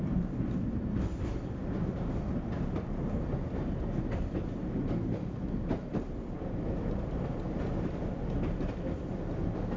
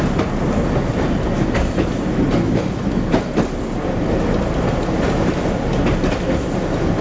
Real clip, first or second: second